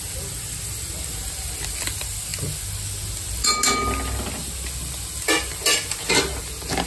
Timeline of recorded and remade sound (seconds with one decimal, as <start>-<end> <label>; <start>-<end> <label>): 0.0-6.9 recorded